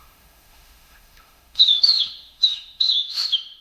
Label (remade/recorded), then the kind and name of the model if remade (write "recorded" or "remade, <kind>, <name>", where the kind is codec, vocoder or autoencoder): remade, autoencoder, DAC-VAE